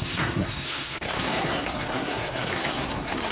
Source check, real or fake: fake